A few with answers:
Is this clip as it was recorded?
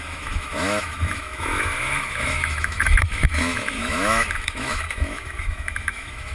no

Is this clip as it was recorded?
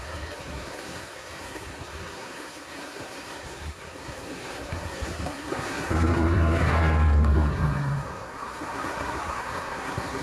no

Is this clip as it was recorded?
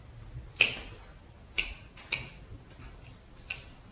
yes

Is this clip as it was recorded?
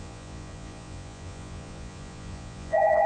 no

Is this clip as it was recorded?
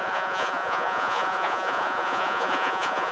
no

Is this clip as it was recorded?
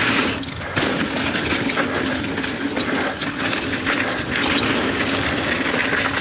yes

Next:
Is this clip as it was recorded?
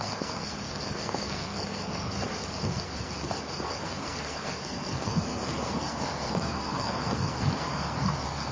no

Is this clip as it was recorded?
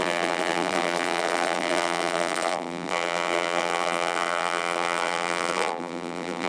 no